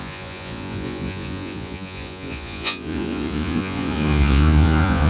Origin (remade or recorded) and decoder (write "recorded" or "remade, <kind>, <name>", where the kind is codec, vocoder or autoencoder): remade, vocoder, Vocos